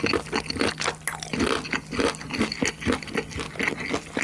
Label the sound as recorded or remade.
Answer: recorded